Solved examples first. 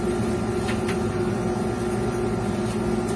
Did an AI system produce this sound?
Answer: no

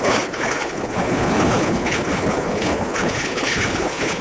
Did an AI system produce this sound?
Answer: yes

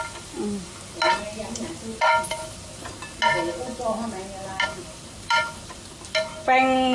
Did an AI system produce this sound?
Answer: no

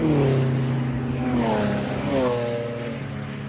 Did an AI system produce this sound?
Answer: no